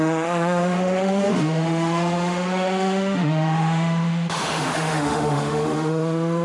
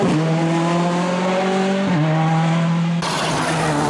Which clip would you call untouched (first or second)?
second